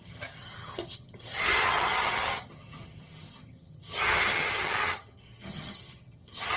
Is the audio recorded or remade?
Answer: remade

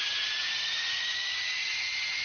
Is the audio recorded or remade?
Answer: remade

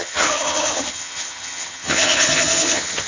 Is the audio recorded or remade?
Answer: remade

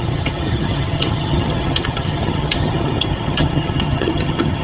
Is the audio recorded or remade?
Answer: remade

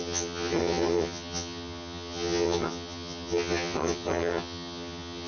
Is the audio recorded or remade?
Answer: remade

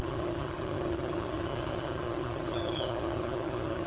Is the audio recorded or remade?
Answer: remade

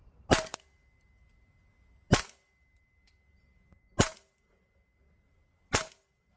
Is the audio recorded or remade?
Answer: recorded